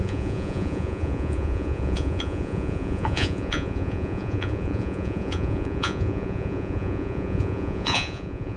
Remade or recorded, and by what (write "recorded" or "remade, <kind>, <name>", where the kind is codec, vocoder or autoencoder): remade, vocoder, Vocos